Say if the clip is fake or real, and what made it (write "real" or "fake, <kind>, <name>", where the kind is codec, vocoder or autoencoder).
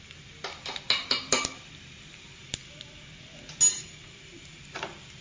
real